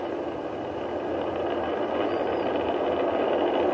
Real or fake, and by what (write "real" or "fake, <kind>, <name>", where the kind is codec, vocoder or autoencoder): real